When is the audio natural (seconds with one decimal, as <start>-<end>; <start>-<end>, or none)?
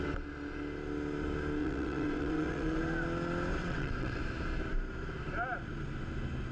0.0-1.6; 2.8-3.6; 4.2-6.5